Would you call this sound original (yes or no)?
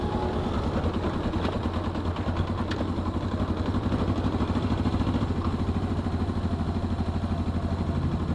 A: yes